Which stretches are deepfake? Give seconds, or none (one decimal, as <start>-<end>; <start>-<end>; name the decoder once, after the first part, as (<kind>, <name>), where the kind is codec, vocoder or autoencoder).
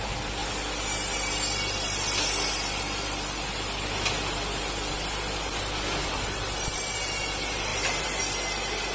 7.7-8.2 (vocoder, BigVGAN v2)